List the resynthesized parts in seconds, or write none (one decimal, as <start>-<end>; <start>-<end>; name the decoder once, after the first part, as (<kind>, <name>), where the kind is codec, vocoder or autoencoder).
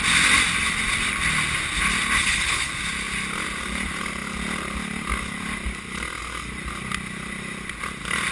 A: 2.2-2.7 (codec, HILCodec)